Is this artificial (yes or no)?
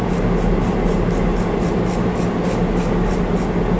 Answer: no